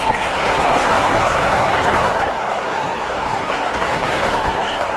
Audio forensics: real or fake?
fake